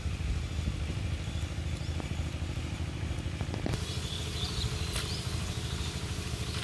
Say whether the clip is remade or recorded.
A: recorded